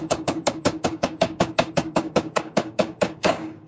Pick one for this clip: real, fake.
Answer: fake